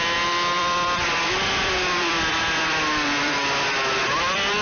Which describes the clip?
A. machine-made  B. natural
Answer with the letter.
A